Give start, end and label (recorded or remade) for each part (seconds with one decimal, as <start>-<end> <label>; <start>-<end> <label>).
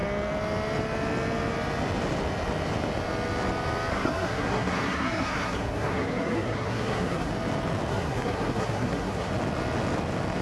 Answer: 0.0-3.9 recorded; 3.9-7.3 remade; 7.3-7.9 recorded; 7.9-9.3 remade; 9.3-10.4 recorded